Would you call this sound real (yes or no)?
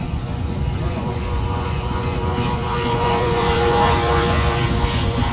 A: no